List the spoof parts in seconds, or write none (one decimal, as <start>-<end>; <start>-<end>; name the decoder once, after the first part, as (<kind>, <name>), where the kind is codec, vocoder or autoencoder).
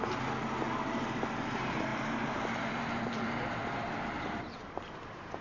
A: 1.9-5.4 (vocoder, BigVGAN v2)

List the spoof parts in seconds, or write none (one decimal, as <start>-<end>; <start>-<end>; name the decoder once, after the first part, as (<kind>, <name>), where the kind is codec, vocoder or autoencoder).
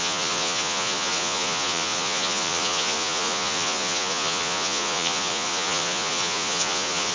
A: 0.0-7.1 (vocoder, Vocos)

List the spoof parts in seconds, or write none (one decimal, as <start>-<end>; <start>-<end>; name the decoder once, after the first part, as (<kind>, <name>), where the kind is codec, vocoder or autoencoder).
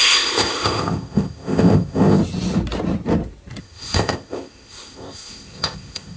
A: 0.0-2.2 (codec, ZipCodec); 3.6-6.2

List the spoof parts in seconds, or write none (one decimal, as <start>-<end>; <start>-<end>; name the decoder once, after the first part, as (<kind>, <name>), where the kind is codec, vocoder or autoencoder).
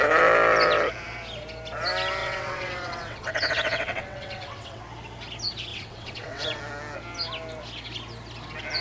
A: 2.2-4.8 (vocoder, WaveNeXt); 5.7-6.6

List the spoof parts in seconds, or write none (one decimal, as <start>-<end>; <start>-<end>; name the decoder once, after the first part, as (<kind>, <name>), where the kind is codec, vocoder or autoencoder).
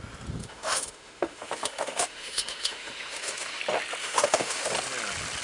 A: 0.4-3.6 (autoencoder, DAC-VAE); 4.0-4.7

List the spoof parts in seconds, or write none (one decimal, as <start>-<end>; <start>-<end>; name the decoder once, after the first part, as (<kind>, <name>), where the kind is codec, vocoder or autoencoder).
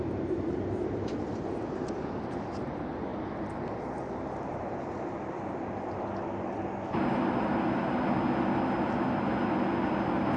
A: none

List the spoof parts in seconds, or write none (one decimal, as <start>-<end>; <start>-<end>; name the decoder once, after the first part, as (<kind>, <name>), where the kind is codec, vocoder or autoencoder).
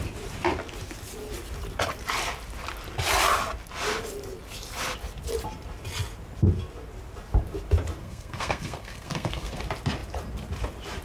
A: 8.0-9.6 (codec, SNAC)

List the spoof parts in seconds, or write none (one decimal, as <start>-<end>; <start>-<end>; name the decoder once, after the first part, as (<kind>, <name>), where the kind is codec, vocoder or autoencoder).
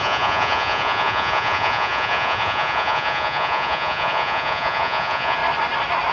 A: 0.0-5.4 (vocoder, Vocos)